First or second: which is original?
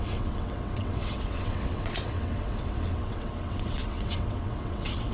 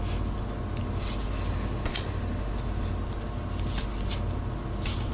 second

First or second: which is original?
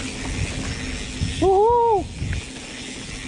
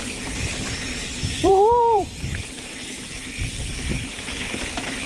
first